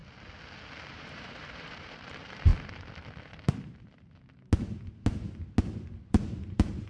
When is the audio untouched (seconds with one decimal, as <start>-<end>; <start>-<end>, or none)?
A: 0.0-0.9; 2.5-6.1